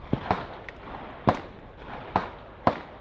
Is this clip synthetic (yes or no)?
no